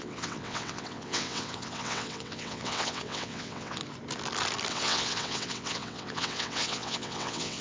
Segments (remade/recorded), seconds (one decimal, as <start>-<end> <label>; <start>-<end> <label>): 0.0-3.8 remade; 3.8-4.7 recorded; 4.7-7.6 remade